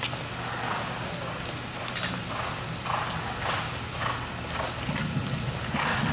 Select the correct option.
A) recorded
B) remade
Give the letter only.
A